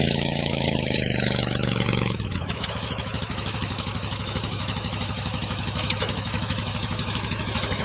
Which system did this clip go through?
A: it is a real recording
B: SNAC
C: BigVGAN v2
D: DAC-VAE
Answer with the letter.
D